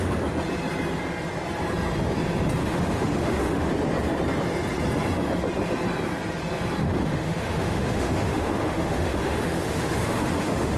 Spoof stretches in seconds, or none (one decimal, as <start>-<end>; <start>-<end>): 2.6-3.7; 6.8-10.8